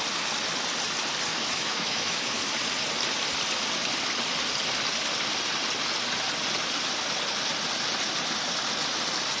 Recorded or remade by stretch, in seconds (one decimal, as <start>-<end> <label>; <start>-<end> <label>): 0.0-1.3 recorded; 1.3-2.4 remade; 2.4-9.4 recorded